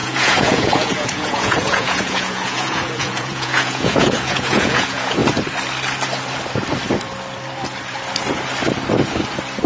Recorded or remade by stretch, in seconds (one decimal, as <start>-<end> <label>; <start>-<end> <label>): 0.0-5.2 remade; 5.2-9.7 recorded